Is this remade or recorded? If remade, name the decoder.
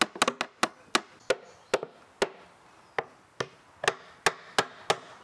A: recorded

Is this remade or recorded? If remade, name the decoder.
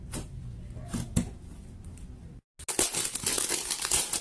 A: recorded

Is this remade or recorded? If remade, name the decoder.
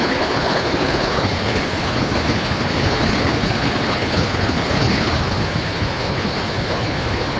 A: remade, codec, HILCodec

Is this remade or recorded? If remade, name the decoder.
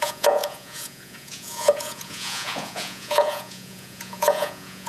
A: remade, vocoder, Vocos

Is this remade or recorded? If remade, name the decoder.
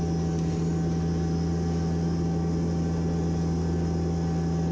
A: recorded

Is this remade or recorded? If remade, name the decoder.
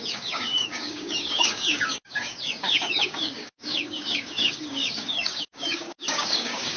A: remade, codec, DAC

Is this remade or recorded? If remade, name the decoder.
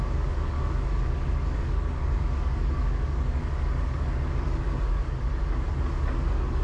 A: remade, codec, DAC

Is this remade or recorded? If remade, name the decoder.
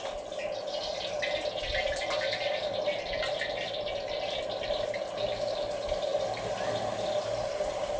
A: recorded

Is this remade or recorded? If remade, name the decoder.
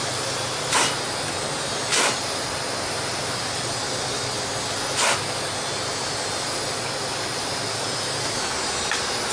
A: recorded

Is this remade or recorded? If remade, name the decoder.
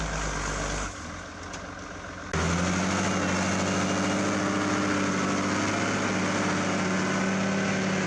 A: recorded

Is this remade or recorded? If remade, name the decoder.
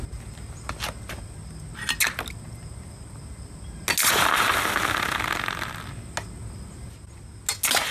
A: recorded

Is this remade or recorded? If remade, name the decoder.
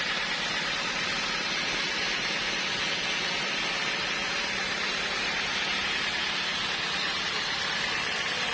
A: recorded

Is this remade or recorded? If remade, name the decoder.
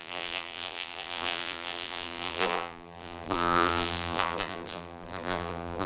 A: remade, vocoder, BigVGAN v2